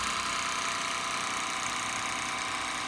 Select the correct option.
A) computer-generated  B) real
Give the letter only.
B